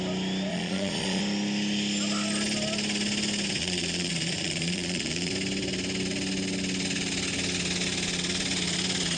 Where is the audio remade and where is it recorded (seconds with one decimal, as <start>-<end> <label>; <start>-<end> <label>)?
0.0-0.5 recorded; 0.5-1.2 remade; 1.2-3.6 recorded; 3.6-5.3 remade; 5.3-9.2 recorded

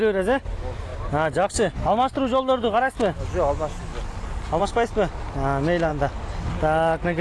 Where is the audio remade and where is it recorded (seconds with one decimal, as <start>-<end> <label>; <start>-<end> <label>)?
0.0-7.2 recorded

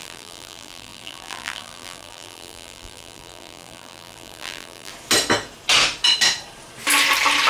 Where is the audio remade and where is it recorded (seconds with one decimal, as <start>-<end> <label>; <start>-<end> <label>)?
0.0-4.9 remade; 4.9-7.5 recorded

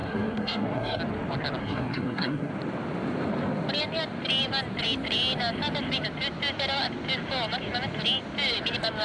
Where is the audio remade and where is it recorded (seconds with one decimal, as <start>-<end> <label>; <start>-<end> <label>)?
0.0-1.0 remade; 1.0-1.6 recorded; 1.6-2.5 remade; 2.5-9.0 recorded

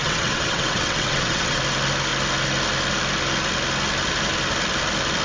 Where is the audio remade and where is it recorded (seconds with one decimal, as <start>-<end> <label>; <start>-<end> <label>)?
0.0-1.6 remade; 1.6-5.2 recorded

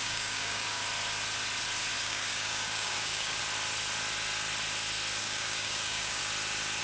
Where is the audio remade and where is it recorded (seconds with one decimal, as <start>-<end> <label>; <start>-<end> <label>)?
0.0-0.8 remade; 0.8-2.0 recorded; 2.0-3.4 remade; 3.4-5.2 recorded; 5.2-6.2 remade; 6.2-6.8 recorded